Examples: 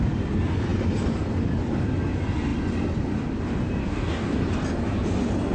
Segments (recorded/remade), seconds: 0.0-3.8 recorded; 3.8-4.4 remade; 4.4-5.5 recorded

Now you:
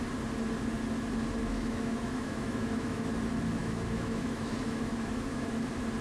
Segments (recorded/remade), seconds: 0.0-1.4 recorded; 1.4-3.1 remade; 3.1-3.6 recorded; 3.6-5.5 remade; 5.5-6.0 recorded

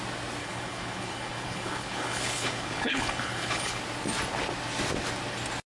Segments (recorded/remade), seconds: 0.0-0.4 recorded; 0.4-3.8 remade; 3.8-5.7 recorded

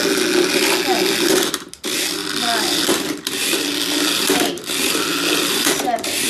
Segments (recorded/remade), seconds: 0.0-2.2 recorded; 2.2-6.3 remade

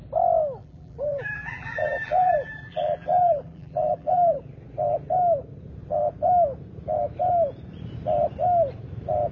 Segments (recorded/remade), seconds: 0.0-0.6 recorded; 0.6-4.4 remade; 4.4-9.3 recorded

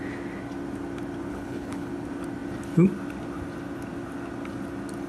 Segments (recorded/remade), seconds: 0.0-1.3 recorded; 1.3-1.9 remade; 1.9-5.1 recorded